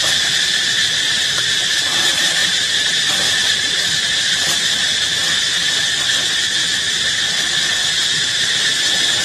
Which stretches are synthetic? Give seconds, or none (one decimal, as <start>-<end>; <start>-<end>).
2.4-4.7; 7.8-8.4